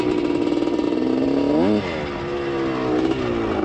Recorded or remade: recorded